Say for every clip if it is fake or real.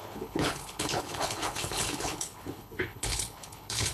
fake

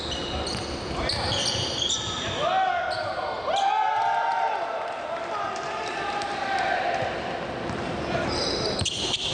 real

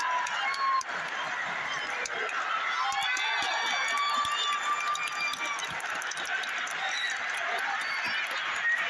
real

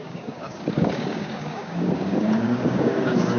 fake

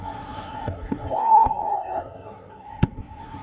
fake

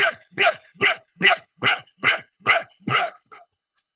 fake